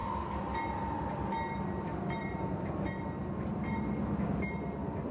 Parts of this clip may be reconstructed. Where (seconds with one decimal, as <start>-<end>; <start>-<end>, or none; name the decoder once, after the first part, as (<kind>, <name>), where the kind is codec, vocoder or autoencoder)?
none